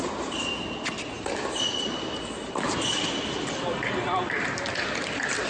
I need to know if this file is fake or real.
real